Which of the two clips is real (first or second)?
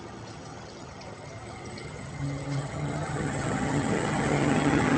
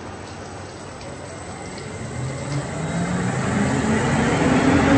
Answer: second